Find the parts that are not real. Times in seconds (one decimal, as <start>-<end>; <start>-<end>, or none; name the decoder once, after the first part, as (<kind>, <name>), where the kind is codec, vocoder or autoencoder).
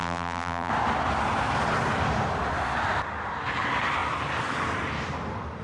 0.0-0.7 (vocoder, BigVGAN v2)